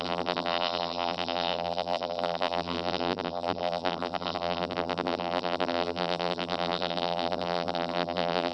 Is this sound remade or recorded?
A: remade